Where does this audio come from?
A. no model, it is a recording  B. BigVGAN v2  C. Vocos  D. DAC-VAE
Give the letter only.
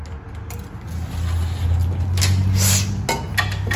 A